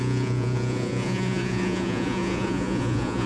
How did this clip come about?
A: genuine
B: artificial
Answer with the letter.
B